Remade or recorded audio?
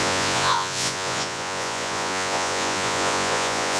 remade